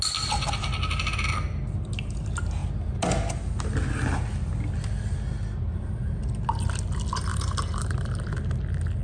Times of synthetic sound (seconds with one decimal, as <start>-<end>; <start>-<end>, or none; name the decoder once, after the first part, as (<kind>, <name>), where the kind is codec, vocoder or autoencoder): 5.7-6.2 (vocoder, BigVGAN v2); 7.3-8.3